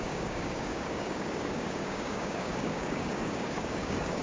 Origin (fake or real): fake